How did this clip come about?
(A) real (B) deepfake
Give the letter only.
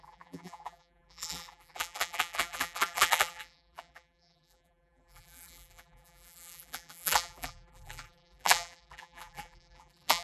B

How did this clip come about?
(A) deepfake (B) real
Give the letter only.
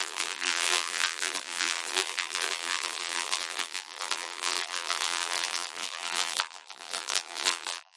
A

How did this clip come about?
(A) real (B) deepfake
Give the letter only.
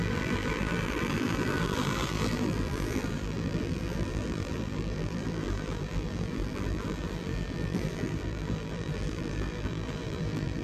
B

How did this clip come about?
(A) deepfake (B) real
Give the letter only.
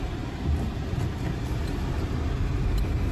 B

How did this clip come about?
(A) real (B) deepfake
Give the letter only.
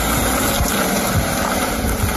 B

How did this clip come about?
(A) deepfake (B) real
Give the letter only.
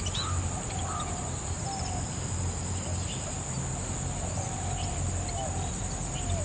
B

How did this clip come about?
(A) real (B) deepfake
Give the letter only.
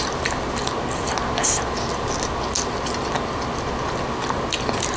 A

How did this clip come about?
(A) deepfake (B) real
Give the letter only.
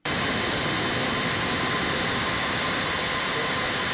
A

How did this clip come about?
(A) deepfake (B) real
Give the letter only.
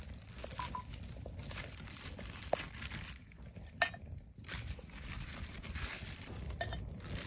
A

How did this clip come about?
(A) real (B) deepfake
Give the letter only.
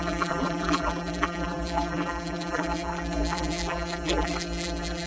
B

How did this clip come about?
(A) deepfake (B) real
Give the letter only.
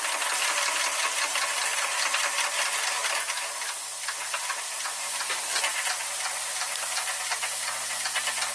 B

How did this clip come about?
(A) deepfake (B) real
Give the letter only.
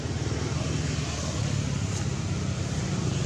B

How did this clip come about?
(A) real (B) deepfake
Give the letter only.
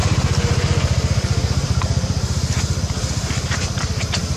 B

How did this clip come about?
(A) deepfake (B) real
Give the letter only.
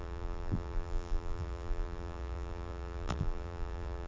A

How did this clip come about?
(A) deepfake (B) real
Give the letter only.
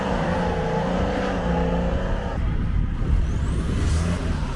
A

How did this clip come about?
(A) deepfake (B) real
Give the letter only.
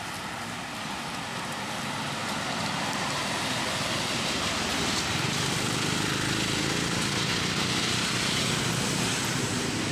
A